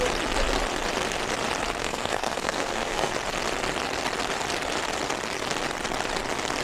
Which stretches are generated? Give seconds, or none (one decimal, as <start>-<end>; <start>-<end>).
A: 1.8-3.1